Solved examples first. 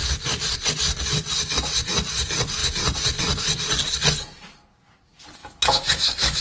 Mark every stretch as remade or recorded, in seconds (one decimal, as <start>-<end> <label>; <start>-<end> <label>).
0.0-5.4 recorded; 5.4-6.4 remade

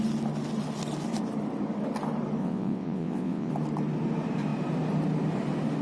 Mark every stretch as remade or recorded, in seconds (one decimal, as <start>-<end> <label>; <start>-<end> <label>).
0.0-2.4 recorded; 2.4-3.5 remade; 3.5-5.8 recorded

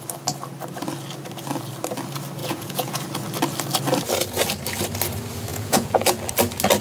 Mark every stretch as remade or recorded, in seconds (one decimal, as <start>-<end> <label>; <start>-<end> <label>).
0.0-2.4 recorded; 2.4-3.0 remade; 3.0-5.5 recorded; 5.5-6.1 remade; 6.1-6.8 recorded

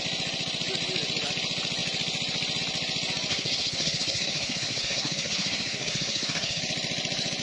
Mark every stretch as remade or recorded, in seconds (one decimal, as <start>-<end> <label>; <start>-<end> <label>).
0.0-3.3 recorded; 3.3-6.6 remade; 6.6-7.4 recorded

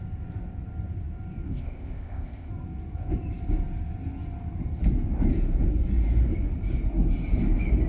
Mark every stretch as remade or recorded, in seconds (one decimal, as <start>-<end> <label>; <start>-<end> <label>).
0.0-1.5 recorded; 1.5-2.5 remade; 2.5-7.9 recorded

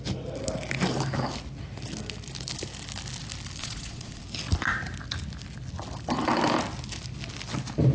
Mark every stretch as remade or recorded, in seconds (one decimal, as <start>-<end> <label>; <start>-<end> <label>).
0.0-3.6 recorded; 3.6-4.2 remade; 4.2-7.9 recorded

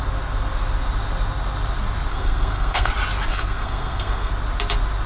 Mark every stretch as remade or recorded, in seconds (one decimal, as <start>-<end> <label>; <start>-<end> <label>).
0.0-2.1 recorded; 2.1-2.9 remade; 2.9-3.3 recorded; 3.3-4.3 remade; 4.3-5.1 recorded